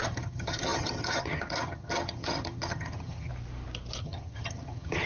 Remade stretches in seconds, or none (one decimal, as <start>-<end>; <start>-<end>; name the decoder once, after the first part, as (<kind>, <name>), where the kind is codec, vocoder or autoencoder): 0.0-3.3 (vocoder, HiFi-GAN); 4.0-5.1